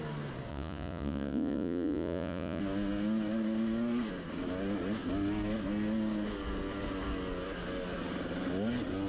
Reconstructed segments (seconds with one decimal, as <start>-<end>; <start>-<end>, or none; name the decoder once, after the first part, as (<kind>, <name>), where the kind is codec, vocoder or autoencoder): 0.5-2.6 (vocoder, Vocos)